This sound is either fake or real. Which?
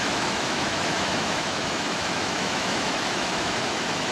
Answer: fake